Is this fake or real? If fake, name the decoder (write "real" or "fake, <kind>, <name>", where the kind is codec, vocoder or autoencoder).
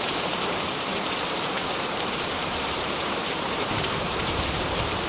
fake, vocoder, BigVGAN v2